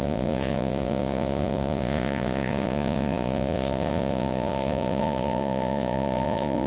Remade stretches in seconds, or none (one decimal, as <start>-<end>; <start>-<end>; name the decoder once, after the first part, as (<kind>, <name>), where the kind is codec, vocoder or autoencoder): 0.0-6.7 (vocoder, Vocos)